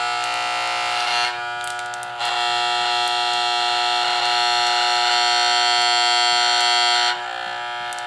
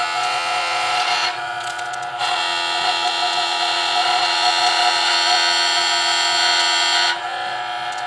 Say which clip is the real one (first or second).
first